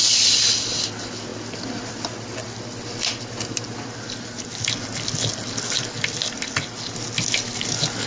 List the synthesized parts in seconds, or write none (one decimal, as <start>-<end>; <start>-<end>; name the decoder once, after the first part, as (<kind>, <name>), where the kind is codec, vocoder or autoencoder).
none

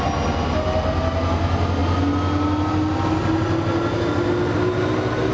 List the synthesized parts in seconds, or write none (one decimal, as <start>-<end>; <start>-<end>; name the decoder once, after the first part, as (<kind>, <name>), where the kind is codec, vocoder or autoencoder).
none

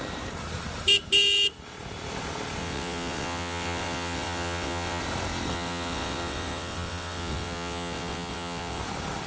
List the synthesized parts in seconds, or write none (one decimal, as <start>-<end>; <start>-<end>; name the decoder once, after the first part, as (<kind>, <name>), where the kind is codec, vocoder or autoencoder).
2.6-5.0 (vocoder, WaveNeXt); 5.5-8.8

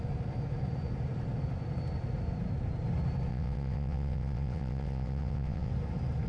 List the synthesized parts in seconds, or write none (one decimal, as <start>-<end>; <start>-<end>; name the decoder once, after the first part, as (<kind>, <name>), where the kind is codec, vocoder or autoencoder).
3.3-5.7 (vocoder, WaveNeXt)

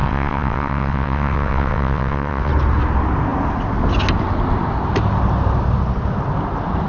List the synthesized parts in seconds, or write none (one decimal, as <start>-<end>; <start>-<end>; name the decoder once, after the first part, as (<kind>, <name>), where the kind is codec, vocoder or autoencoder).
0.0-2.5 (vocoder, WaveNeXt)

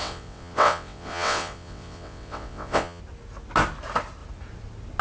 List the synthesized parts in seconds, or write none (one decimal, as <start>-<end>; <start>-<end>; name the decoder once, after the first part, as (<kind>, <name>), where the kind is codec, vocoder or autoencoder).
0.0-3.0 (vocoder, WaveNeXt)

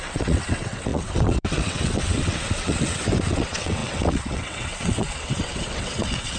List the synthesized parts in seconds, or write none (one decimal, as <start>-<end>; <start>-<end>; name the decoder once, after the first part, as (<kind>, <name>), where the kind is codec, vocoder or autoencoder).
0.0-6.4 (vocoder, WaveNeXt)